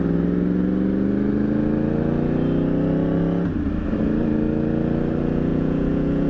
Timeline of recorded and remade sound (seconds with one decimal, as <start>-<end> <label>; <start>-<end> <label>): 0.0-5.5 recorded; 5.5-6.3 remade